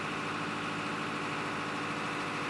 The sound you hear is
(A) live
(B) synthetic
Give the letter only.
A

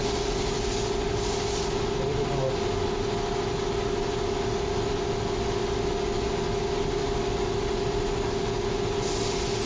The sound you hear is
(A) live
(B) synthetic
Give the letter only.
A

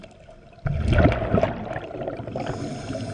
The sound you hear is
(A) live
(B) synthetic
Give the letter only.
A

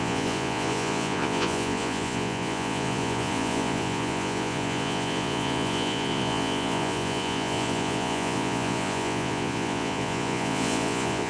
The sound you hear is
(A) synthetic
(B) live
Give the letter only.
A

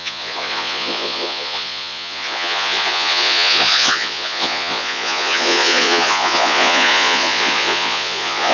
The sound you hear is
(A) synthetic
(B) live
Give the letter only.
A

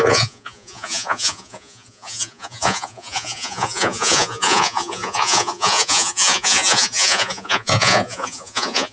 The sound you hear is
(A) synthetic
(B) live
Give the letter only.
A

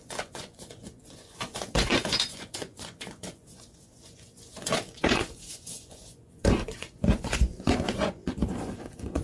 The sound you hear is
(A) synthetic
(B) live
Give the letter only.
A